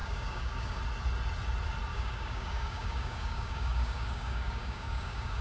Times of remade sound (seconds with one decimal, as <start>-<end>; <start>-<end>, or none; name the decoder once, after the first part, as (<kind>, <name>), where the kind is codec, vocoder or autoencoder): 0.0-0.8 (codec, DAC); 1.9-5.4